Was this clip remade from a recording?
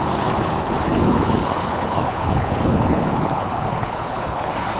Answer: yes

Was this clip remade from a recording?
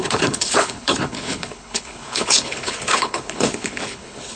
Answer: yes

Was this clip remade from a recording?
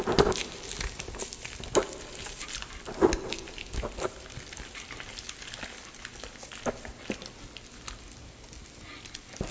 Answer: no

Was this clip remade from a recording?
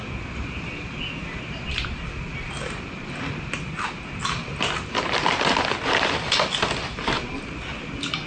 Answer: no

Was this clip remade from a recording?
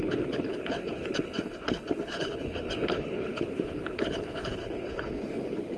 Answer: yes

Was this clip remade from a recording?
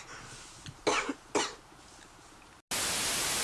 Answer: no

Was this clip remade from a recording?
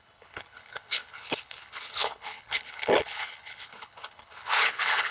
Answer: yes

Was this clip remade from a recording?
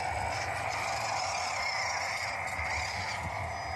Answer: no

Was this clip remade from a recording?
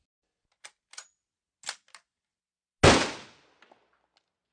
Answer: no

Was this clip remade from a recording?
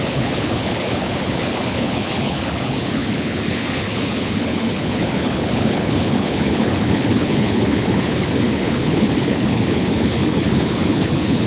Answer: yes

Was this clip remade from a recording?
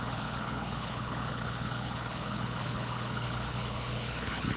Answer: yes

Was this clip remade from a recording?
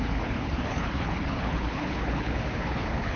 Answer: yes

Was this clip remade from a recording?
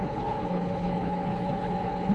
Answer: yes